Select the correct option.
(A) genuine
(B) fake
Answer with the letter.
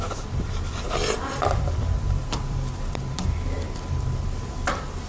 B